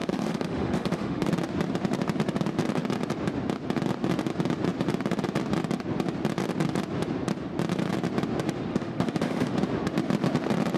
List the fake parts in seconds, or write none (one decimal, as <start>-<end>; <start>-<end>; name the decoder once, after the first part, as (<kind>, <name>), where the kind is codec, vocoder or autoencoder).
0.0-1.3 (autoencoder, DAC-VAE); 8.7-9.6